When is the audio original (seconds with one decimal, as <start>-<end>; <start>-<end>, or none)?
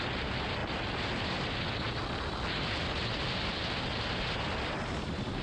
0.0-5.4